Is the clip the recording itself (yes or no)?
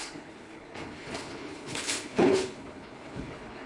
no